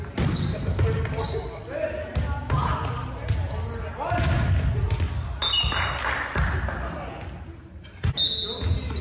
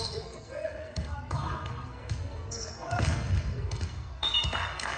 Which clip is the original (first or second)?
first